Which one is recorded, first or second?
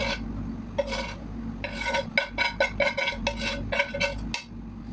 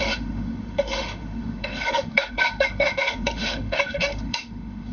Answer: first